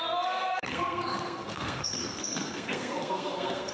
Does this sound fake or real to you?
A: fake